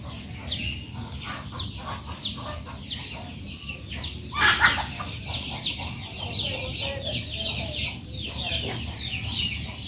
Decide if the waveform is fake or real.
real